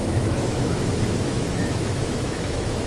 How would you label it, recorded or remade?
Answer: remade